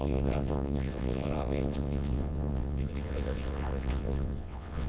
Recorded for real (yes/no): no